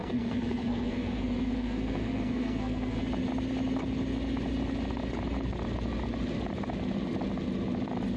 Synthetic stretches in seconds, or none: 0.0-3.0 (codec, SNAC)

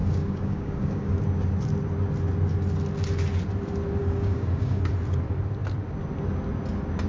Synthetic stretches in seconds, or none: 0.0-1.2 (codec, DAC); 4.0-4.8

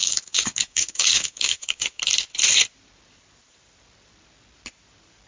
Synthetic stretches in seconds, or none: 0.0-2.0 (codec, DAC)

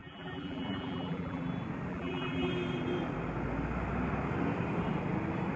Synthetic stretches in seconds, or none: 0.0-1.4 (vocoder, BigVGAN v2); 1.9-2.5

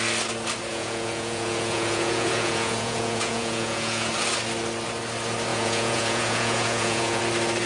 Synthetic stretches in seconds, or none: 0.7-4.1 (vocoder, Vocos); 5.5-7.2

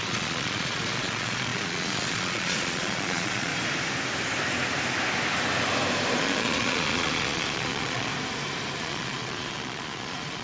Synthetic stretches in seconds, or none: 0.0-3.5 (vocoder, Vocos); 6.2-8.1; 8.8-10.4